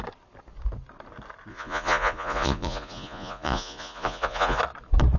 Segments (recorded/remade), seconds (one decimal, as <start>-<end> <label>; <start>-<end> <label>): 0.0-1.5 recorded; 1.5-4.6 remade; 4.6-5.2 recorded